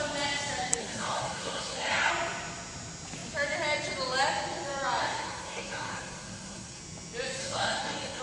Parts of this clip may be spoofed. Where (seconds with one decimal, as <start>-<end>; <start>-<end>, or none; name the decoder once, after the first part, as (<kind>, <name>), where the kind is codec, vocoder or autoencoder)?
0.8-2.1 (codec, SNAC); 5.0-6.8; 7.4-8.2